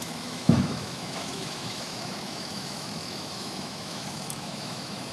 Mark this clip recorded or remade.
remade